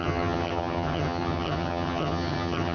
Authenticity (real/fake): fake